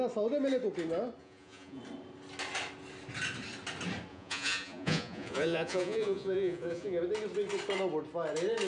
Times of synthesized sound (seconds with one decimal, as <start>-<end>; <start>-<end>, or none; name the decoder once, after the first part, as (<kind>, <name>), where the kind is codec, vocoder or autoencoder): 1.2-1.8 (vocoder, Vocos); 4.1-7.0